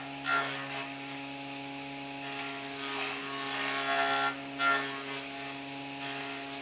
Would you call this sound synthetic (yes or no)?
no